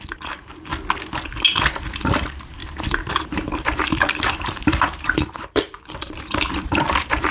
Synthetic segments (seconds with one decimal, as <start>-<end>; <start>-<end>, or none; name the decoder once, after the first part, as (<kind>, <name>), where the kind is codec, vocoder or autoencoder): 0.0-0.7 (vocoder, BigVGAN v2); 1.8-7.3